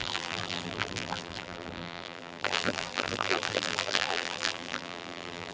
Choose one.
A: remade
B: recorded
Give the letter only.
A